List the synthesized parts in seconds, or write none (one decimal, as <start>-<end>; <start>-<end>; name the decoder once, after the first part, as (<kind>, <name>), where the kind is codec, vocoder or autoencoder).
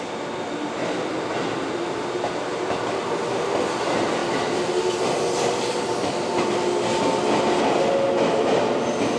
none